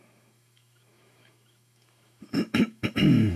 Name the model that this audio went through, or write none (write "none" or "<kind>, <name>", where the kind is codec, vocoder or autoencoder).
autoencoder, DAC-VAE